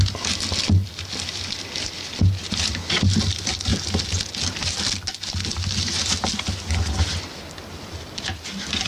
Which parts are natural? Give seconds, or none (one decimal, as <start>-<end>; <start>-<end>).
0.0-8.9